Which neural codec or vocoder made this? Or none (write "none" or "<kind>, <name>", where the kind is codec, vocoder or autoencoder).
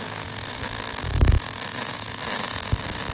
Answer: autoencoder, DAC-VAE